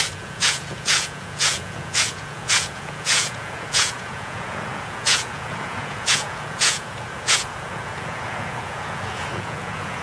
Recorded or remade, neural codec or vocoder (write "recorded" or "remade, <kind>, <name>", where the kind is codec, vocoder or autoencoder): remade, vocoder, Vocos